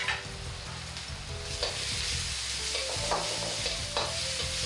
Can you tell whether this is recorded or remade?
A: recorded